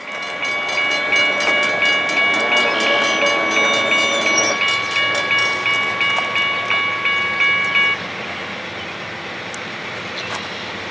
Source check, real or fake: real